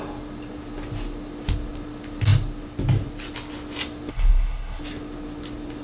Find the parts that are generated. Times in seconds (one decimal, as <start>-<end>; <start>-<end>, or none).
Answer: 4.1-4.8